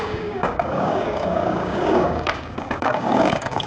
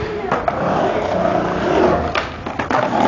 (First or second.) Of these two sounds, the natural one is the second